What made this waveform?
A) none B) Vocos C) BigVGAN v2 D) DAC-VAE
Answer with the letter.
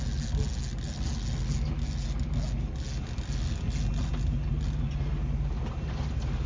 A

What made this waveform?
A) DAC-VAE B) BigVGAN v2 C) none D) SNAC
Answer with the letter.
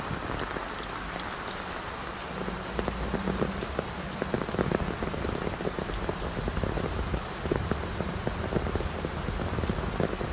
C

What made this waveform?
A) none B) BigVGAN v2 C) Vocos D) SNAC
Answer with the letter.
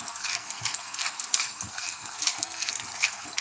D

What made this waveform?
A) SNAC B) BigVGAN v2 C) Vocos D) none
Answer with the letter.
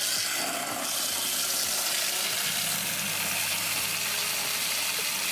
D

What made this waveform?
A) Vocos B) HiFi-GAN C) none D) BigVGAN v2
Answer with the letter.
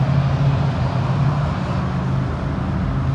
C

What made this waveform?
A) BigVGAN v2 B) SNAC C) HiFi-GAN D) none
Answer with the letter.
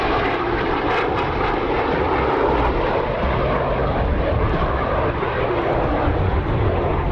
D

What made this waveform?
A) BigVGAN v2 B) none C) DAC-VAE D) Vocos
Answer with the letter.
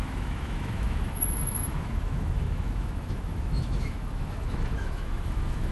C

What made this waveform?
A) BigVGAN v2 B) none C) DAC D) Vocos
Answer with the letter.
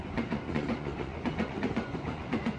D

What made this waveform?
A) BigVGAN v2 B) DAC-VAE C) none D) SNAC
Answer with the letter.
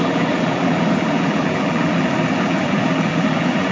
A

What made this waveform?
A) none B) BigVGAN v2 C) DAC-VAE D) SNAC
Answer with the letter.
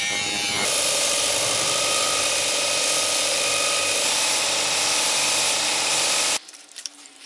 B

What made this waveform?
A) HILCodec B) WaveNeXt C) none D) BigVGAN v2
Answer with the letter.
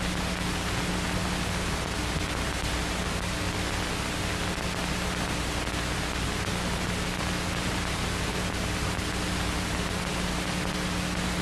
C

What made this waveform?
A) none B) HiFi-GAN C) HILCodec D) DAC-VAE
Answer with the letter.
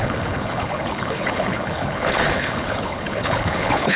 C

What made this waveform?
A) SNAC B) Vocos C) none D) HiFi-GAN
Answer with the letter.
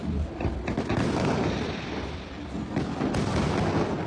C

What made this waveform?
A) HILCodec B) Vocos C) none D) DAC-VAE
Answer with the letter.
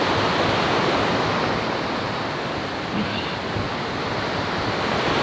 C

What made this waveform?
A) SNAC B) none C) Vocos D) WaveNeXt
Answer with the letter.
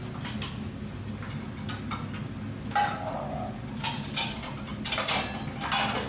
B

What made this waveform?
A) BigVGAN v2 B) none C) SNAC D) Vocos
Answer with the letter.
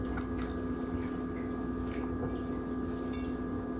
B